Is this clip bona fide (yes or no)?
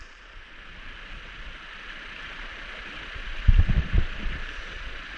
no